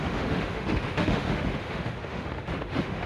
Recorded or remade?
remade